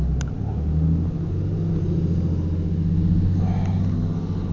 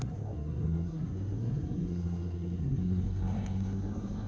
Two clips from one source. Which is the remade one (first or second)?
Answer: second